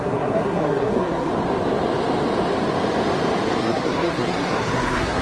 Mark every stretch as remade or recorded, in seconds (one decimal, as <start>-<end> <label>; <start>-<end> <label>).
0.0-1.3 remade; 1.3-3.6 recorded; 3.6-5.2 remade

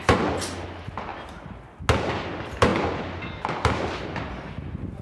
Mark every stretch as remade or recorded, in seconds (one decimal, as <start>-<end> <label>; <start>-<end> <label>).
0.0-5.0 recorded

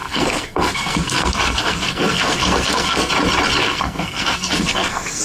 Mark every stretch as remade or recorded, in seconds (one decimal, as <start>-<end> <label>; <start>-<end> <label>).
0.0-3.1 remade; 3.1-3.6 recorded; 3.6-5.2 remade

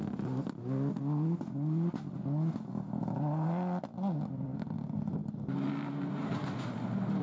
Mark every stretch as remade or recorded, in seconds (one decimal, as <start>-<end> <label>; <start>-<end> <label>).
0.0-7.2 recorded

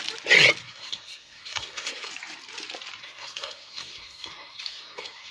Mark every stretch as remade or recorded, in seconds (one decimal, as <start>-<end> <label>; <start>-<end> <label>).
0.0-0.6 recorded; 0.6-2.1 remade; 2.1-3.0 recorded; 3.0-5.3 remade

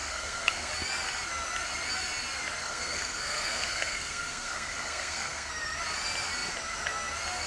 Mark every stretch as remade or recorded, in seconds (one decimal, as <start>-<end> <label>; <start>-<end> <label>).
0.0-0.7 remade; 0.7-2.6 recorded; 2.6-5.5 remade; 5.5-7.5 recorded

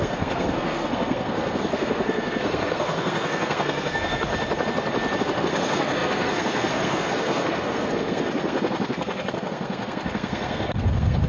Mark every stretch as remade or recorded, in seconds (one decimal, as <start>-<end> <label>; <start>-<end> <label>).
0.0-4.3 remade; 4.3-5.2 recorded; 5.2-11.3 remade

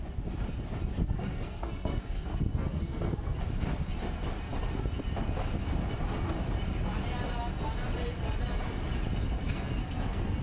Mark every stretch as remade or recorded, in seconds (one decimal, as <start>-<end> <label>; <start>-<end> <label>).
0.0-1.0 recorded; 1.0-3.4 remade; 3.4-9.4 recorded; 9.4-10.4 remade